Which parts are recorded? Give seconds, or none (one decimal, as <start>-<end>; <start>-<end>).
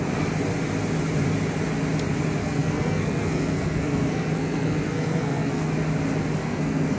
0.0-2.4; 5.7-6.4